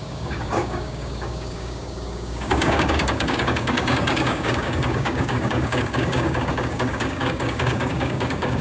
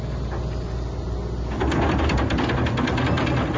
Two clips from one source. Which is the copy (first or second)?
first